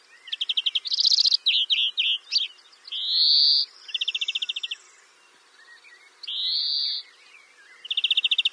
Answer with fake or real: real